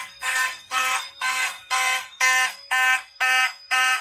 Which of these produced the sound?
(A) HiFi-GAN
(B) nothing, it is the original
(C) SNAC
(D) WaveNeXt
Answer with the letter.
C